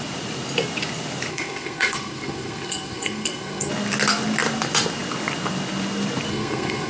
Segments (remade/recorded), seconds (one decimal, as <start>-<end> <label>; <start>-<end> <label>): 0.0-1.3 recorded; 1.3-3.7 remade; 3.7-6.3 recorded; 6.3-6.9 remade

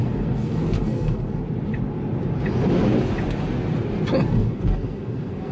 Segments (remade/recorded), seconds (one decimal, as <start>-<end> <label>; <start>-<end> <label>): 0.0-1.4 remade; 1.4-4.3 recorded; 4.3-5.5 remade

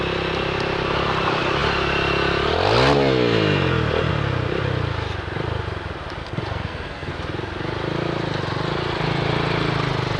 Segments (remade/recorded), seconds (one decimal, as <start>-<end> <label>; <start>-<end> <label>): 0.0-6.2 recorded; 6.2-7.1 remade; 7.1-10.2 recorded

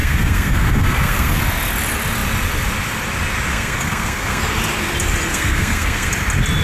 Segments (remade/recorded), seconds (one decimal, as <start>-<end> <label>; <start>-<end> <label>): 0.0-1.4 remade; 1.4-3.5 recorded; 3.5-4.4 remade; 4.4-5.3 recorded; 5.3-6.1 remade; 6.1-6.6 recorded

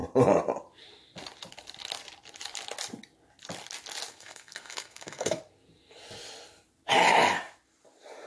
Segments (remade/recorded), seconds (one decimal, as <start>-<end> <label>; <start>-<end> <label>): 0.0-4.1 recorded; 4.1-5.4 remade; 5.4-8.3 recorded